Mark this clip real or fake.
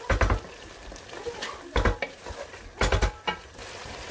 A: real